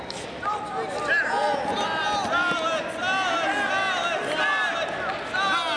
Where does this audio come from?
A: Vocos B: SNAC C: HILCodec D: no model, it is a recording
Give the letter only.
D